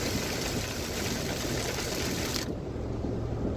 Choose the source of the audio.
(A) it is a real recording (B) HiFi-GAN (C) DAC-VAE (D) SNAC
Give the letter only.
A